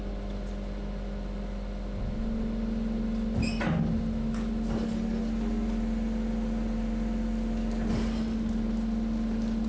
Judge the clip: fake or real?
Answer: real